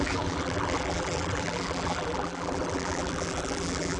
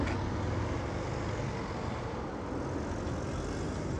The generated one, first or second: first